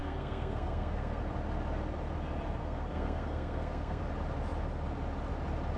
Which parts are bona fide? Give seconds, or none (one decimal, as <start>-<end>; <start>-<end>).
1.2-2.6; 4.0-5.8